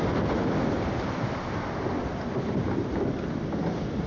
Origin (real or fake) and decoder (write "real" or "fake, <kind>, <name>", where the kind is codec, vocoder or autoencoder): real